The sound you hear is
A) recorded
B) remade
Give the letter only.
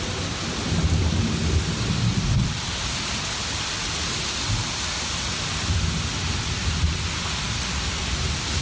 A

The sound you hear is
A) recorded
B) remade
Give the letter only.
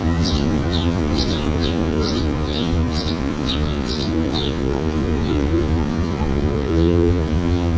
B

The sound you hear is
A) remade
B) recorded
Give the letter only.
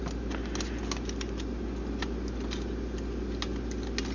B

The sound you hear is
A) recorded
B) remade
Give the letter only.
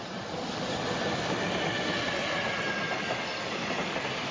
A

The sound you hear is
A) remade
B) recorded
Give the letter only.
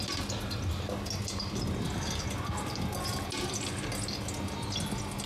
B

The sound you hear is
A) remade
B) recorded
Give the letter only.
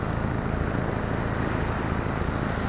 B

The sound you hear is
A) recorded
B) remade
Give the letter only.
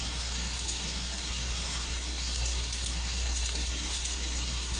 B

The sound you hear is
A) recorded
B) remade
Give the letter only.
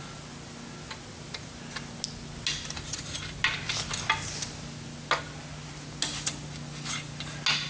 A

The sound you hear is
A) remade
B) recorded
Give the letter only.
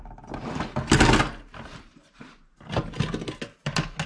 B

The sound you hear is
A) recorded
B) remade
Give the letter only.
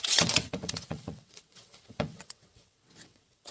B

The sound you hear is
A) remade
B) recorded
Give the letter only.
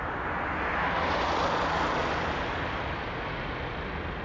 B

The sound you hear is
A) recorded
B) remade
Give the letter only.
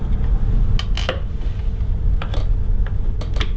A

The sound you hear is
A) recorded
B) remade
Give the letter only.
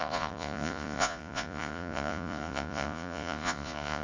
B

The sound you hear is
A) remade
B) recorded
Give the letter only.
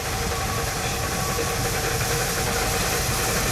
B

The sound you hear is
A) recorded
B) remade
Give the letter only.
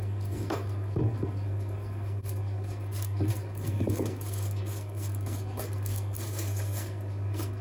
B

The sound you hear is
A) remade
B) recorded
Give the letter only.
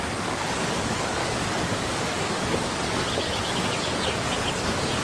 A